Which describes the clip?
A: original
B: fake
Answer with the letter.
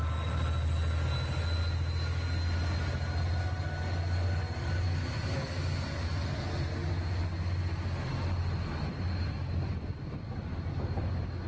A